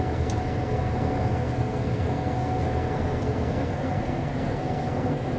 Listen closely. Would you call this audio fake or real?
fake